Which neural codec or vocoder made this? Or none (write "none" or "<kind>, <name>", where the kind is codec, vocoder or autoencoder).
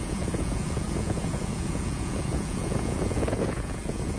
vocoder, Vocos